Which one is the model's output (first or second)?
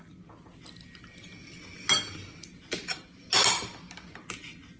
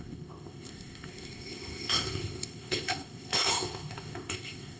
second